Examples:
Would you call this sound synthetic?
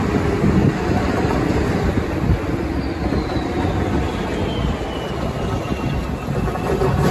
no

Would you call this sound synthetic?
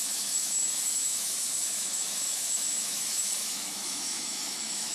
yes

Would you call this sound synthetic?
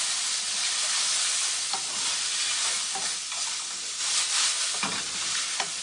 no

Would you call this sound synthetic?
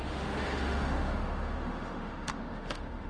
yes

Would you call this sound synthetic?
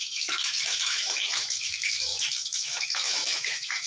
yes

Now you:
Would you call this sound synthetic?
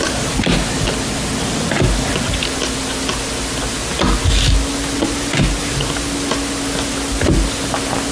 no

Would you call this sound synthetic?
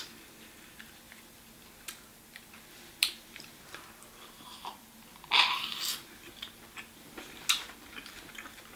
no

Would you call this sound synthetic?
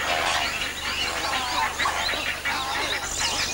no